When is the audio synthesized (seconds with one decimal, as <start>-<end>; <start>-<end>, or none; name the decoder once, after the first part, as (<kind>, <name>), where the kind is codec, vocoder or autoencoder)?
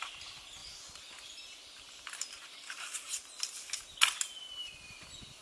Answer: none